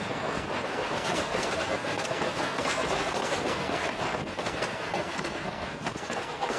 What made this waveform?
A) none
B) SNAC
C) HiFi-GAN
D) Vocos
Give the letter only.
B